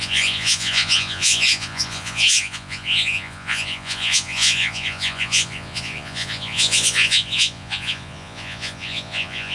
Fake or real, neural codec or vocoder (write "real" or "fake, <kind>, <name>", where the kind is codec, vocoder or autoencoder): fake, vocoder, Vocos